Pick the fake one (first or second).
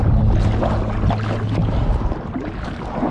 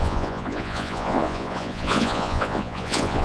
second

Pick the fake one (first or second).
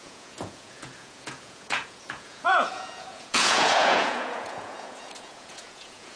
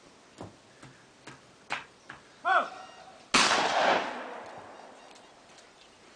first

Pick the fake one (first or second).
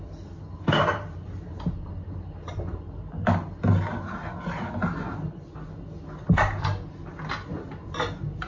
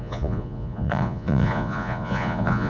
second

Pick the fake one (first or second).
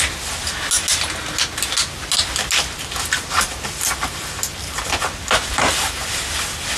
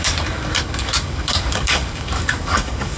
second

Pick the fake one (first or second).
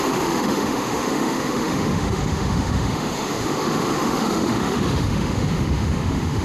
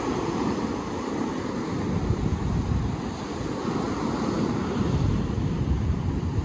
first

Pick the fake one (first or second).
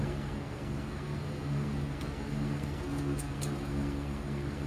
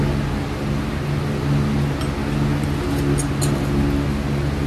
first